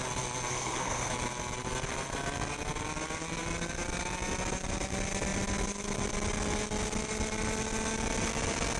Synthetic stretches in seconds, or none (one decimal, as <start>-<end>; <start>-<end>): 0.5-1.1